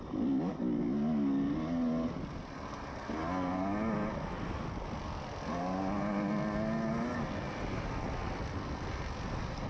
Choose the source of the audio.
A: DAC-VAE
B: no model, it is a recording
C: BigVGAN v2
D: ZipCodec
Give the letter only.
B